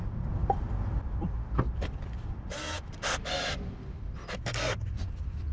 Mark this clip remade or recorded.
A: remade